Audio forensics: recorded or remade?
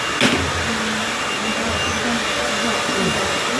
recorded